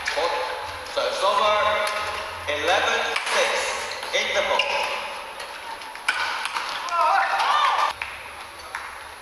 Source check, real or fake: real